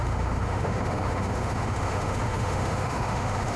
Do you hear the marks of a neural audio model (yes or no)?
yes